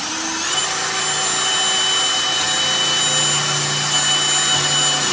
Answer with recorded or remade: recorded